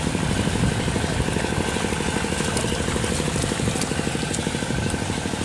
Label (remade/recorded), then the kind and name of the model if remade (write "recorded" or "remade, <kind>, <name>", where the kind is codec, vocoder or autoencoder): recorded